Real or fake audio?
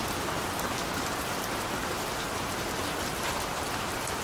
real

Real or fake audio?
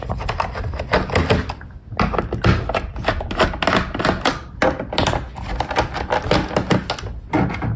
real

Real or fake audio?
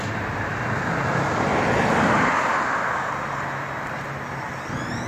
real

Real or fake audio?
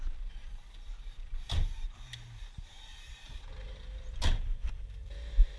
fake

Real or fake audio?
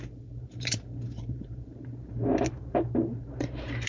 fake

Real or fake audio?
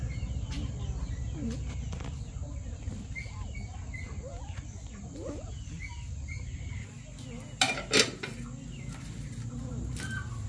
real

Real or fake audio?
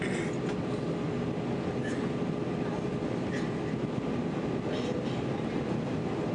real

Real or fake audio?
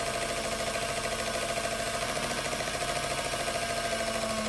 real